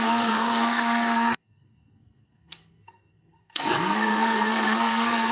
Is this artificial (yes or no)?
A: yes